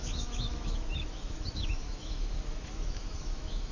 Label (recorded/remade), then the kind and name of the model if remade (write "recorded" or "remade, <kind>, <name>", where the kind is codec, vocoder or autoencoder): remade, autoencoder, DAC-VAE